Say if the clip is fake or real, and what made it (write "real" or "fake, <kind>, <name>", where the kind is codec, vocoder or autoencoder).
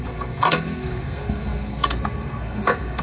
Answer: fake, codec, SNAC